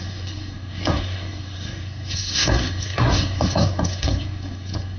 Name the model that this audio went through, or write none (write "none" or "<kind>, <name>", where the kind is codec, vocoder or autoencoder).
codec, SNAC